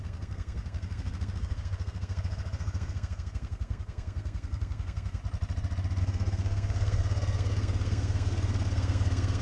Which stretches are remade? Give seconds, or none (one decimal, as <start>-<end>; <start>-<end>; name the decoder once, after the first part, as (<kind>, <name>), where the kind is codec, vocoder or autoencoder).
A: 0.0-5.2 (codec, SNAC); 6.0-9.4